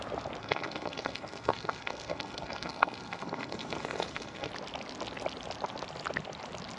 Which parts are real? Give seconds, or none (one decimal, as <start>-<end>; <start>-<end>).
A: 0.0-0.4; 4.5-6.8